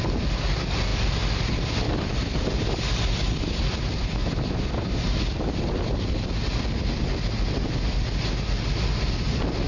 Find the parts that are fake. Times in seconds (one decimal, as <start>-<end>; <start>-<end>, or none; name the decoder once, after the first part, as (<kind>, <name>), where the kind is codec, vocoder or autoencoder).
0.9-5.7 (vocoder, BigVGAN v2)